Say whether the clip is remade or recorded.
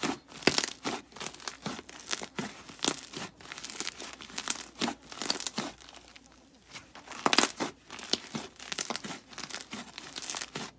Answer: recorded